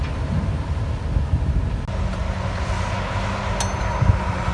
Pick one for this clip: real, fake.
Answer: real